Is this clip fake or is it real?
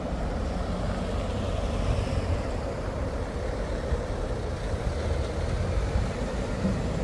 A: real